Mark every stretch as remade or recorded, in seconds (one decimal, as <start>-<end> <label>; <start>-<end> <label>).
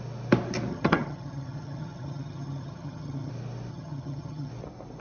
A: 0.0-0.7 recorded; 0.7-3.3 remade; 3.3-3.7 recorded; 3.7-4.5 remade; 4.5-5.0 recorded